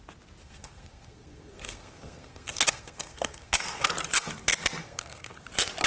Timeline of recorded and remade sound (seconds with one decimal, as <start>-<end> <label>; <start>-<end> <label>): 0.0-0.4 recorded; 0.4-3.9 remade; 3.9-4.8 recorded; 4.8-5.4 remade; 5.4-5.9 recorded